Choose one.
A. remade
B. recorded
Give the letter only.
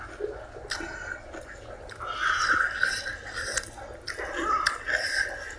B